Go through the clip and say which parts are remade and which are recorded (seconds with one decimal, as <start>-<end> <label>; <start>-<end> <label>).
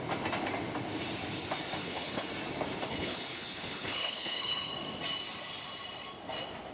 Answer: 0.0-1.8 recorded; 1.8-2.3 remade; 2.3-2.9 recorded; 2.9-4.7 remade; 4.7-6.7 recorded